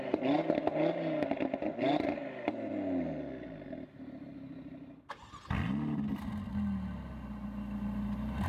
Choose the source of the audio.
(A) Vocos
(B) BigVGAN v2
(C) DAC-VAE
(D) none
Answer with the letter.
D